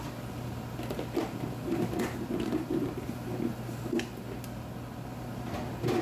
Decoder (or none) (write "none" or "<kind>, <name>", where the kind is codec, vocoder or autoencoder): none